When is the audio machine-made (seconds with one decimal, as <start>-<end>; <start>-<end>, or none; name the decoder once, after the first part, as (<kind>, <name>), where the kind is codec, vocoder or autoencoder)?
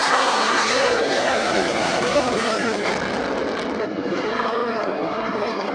0.0-2.9 (codec, SNAC); 3.8-5.7